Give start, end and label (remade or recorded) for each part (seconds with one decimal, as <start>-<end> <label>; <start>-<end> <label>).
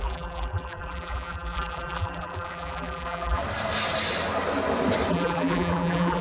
0.0-3.4 remade; 3.4-5.1 recorded; 5.1-6.2 remade